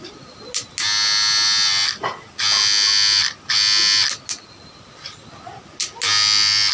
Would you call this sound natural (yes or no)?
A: yes